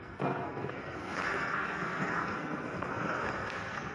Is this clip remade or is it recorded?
remade